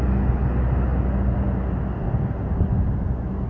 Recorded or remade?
recorded